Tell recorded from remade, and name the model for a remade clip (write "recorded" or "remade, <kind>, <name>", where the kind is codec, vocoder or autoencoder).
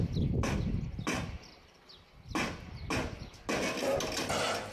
recorded